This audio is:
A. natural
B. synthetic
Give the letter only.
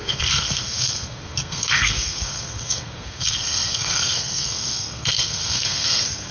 B